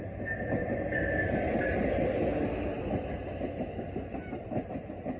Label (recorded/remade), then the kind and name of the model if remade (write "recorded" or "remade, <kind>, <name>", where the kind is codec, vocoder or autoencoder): recorded